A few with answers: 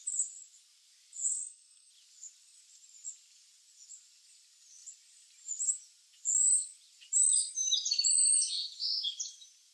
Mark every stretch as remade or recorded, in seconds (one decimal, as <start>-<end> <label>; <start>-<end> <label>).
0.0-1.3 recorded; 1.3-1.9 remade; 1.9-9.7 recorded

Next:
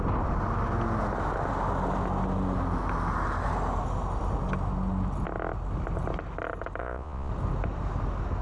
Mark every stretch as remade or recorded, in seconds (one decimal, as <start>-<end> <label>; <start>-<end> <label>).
0.0-6.8 recorded; 6.8-7.3 remade; 7.3-8.4 recorded

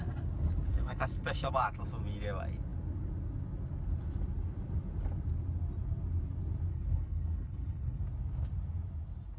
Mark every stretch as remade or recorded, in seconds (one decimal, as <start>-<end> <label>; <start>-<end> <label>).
0.0-0.7 recorded; 0.7-1.5 remade; 1.5-6.7 recorded; 6.7-8.0 remade; 8.0-9.4 recorded

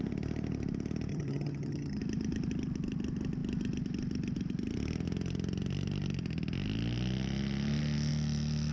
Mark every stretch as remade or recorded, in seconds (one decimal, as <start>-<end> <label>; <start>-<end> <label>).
0.0-1.1 recorded; 1.1-2.0 remade; 2.0-8.7 recorded

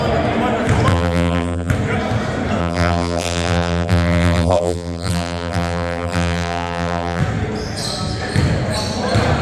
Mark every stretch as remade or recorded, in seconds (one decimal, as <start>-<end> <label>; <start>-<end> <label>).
0.0-0.9 recorded; 0.9-1.7 remade; 1.7-2.6 recorded; 2.6-7.2 remade; 7.2-9.4 recorded

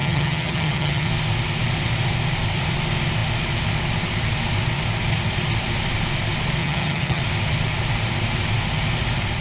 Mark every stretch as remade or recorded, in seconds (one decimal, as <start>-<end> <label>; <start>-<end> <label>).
0.0-1.1 remade; 1.1-6.6 recorded; 6.6-7.2 remade; 7.2-9.4 recorded